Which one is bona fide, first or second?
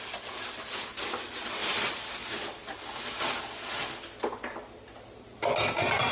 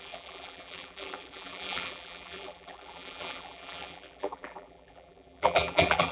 first